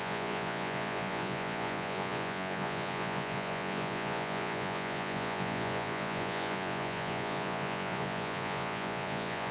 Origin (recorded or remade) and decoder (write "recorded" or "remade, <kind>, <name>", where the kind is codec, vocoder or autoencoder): remade, vocoder, Vocos